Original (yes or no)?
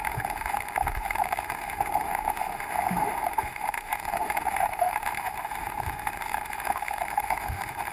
no